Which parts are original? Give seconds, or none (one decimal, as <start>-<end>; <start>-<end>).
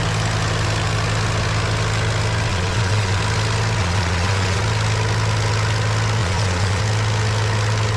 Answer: 0.0-2.5; 3.2-3.8; 4.6-6.2; 6.8-8.0